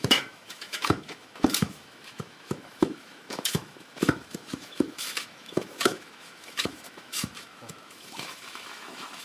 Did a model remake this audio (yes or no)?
yes